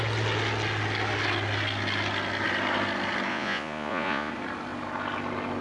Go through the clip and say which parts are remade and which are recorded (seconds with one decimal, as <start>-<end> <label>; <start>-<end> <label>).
0.0-3.3 recorded; 3.3-4.3 remade; 4.3-5.6 recorded